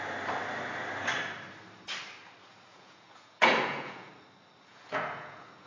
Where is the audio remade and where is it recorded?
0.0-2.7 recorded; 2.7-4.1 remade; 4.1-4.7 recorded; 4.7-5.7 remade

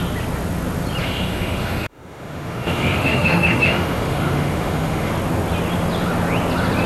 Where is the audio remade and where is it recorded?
0.0-1.0 recorded; 1.0-5.1 remade; 5.1-6.9 recorded

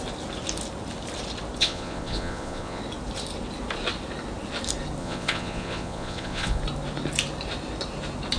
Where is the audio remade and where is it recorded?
0.0-1.6 recorded; 1.6-2.8 remade; 2.8-5.0 recorded; 5.0-6.6 remade; 6.6-8.4 recorded

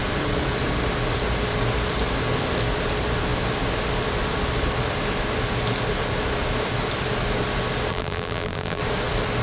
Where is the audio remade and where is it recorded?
0.0-7.9 recorded; 7.9-8.8 remade; 8.8-9.4 recorded

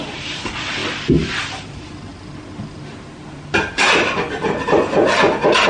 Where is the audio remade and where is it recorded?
0.0-0.8 remade; 0.8-1.4 recorded; 1.4-2.1 remade; 2.1-5.7 recorded

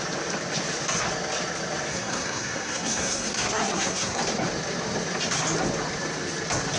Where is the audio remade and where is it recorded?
0.0-1.9 recorded; 1.9-4.2 remade; 4.2-6.8 recorded

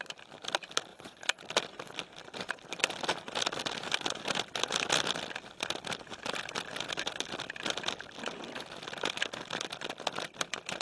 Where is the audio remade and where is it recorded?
0.0-0.9 recorded; 0.9-1.4 remade; 1.4-10.8 recorded

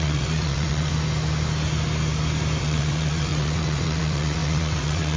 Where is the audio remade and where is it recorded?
0.0-0.9 remade; 0.9-2.6 recorded; 2.6-5.2 remade